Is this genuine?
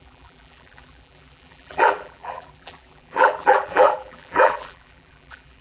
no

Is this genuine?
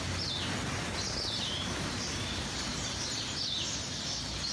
yes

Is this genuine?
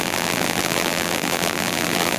no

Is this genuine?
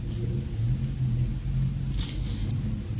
yes